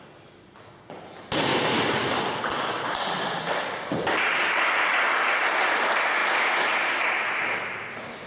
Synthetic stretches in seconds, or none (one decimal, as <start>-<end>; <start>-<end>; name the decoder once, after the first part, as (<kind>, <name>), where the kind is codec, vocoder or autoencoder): none